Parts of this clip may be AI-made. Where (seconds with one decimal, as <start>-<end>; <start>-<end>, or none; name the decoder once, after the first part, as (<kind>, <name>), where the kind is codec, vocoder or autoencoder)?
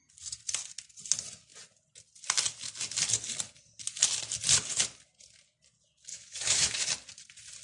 6.1-6.8 (autoencoder, DAC-VAE)